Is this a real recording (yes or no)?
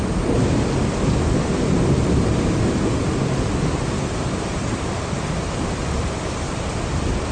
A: yes